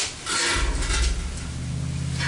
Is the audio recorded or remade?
recorded